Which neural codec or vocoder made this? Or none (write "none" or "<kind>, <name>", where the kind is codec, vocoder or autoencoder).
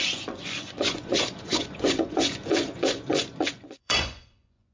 vocoder, Vocos